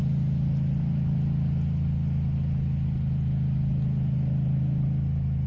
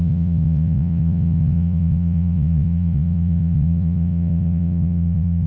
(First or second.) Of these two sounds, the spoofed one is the second